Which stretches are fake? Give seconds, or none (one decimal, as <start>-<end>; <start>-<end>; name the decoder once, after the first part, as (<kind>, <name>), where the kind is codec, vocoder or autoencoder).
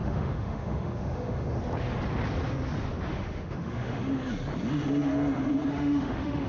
0.0-1.6 (autoencoder, DAC-VAE); 3.1-4.0; 5.7-6.5